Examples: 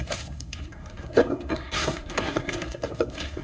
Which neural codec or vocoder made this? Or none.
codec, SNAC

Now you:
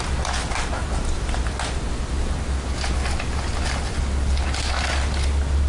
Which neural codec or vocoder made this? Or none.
none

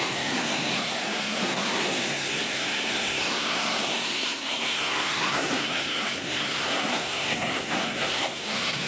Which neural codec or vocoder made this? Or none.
codec, SNAC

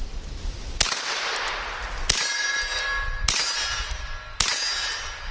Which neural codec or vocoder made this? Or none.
none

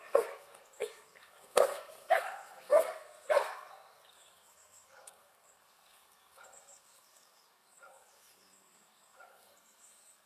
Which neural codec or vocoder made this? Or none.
codec, SNAC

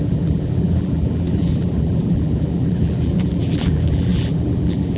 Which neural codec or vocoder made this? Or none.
vocoder, BigVGAN v2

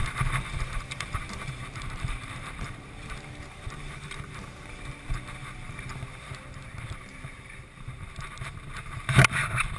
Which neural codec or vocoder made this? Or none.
vocoder, BigVGAN v2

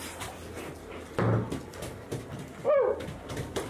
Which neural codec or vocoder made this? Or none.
none